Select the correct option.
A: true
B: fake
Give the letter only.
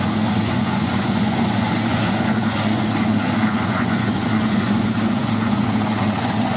B